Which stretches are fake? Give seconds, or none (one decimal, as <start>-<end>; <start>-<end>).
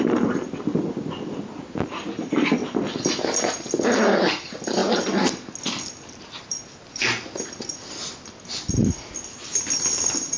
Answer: none